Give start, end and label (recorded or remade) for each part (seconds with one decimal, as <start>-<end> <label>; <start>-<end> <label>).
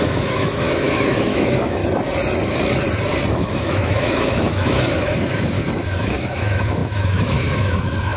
0.0-1.8 remade; 1.8-3.3 recorded; 3.3-8.2 remade